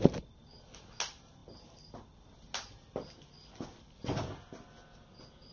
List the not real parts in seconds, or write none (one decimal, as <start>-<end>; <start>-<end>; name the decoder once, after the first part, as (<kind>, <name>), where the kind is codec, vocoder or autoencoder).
none